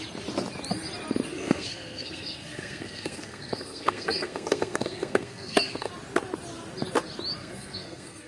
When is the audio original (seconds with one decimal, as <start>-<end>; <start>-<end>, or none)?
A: 0.0-1.3; 5.9-7.4